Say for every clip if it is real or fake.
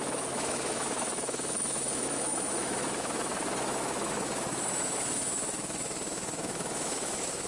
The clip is fake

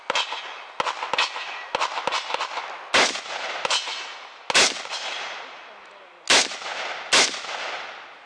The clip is real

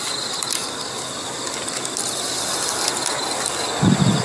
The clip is real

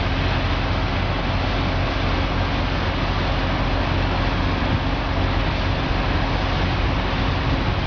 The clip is real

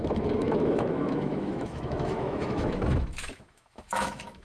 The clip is fake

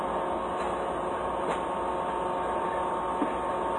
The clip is real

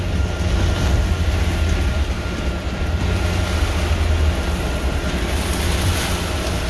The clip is real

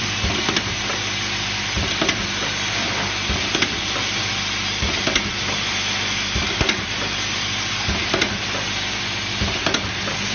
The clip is real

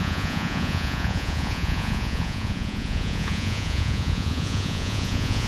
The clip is fake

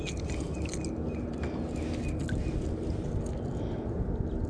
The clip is real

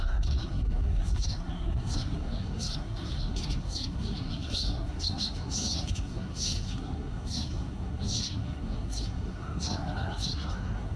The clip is fake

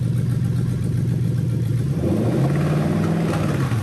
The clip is real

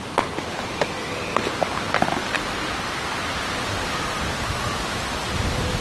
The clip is real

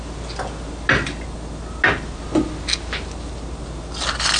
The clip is real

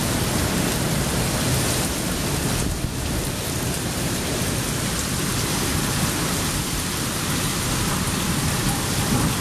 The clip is real